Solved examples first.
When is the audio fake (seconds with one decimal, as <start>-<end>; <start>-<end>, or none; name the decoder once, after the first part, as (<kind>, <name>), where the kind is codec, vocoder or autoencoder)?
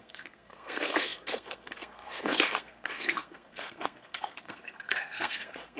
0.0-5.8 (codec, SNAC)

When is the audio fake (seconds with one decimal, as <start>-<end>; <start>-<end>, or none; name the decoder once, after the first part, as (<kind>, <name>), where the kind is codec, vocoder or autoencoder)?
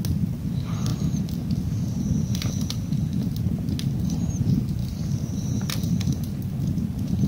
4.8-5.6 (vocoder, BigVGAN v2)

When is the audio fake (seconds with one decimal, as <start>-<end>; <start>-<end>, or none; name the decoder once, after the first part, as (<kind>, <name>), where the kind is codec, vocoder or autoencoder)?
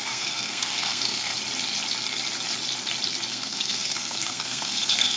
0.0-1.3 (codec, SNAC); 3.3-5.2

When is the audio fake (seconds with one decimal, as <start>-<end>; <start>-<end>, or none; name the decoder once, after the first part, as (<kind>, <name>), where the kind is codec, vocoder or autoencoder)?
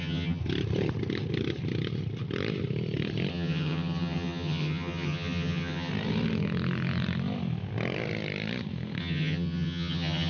0.0-0.4 (vocoder, HiFi-GAN); 3.3-5.9; 9.0-10.3